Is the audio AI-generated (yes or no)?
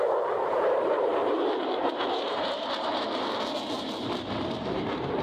yes